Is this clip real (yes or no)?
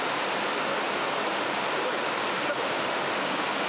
yes